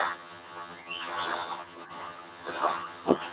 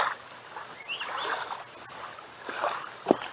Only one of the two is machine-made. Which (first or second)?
first